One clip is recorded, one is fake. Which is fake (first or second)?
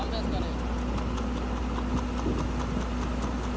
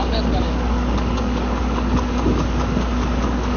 second